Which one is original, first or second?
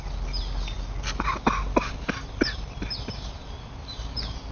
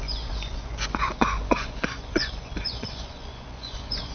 first